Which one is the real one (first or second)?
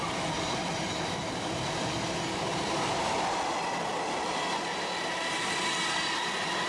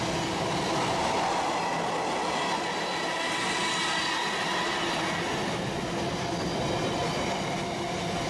second